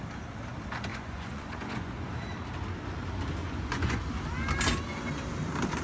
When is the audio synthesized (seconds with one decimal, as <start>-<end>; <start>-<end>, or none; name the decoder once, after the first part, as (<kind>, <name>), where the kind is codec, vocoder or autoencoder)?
0.9-2.1 (vocoder, Vocos); 3.4-4.0